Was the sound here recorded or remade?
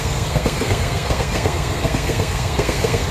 remade